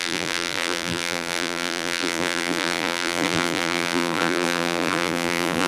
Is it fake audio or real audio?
fake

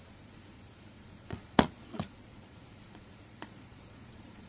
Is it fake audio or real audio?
fake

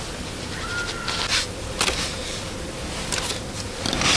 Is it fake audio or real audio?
real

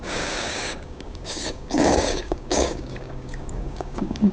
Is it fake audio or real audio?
fake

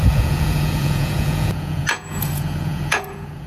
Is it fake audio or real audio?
fake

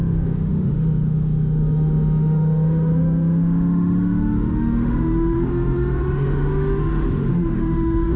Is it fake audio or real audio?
fake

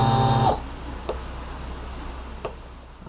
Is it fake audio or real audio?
real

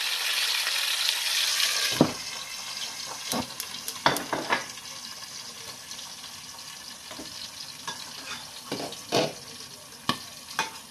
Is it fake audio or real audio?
real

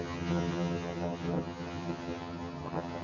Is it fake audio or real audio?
fake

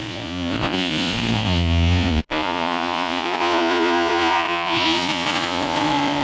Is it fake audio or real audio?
fake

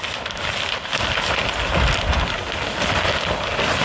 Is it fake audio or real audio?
real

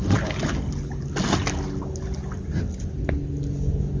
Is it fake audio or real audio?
real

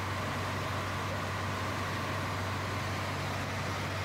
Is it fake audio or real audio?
real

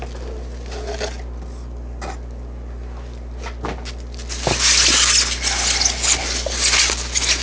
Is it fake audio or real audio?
real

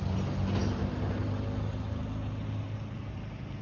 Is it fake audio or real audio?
real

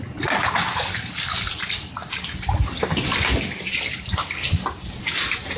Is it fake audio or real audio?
real